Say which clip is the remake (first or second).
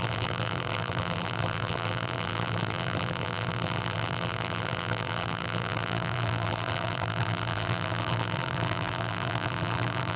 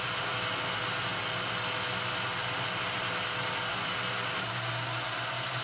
first